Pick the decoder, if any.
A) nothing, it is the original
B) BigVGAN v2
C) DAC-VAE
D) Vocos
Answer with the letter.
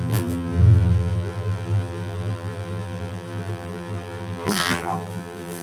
B